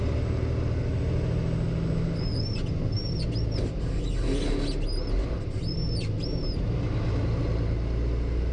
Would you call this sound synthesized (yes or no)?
no